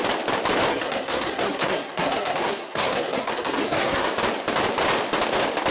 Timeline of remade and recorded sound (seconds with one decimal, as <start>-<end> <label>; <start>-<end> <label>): 0.0-0.7 recorded; 0.7-4.1 remade; 4.1-5.7 recorded